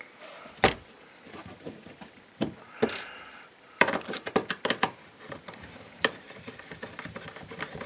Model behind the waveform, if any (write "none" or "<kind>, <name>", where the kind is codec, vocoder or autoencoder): vocoder, BigVGAN v2